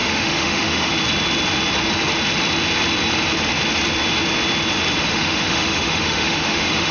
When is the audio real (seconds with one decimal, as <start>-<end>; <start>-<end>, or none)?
0.9-5.1